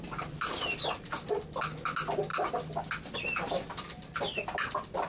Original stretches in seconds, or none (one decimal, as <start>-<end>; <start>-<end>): 0.0-5.1